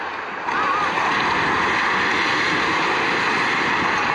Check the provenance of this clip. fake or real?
real